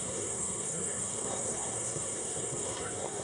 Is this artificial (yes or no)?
yes